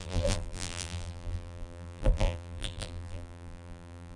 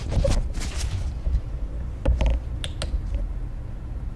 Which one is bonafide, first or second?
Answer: second